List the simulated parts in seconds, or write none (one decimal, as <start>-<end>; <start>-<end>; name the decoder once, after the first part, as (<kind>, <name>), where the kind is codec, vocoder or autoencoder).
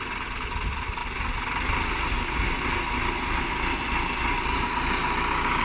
none